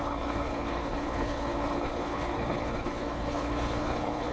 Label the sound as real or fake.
fake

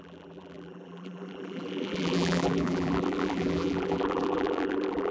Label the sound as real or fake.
fake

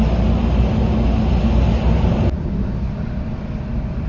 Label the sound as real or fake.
real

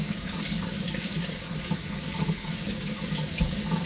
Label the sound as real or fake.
fake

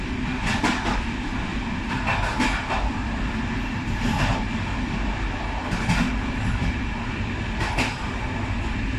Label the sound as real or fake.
real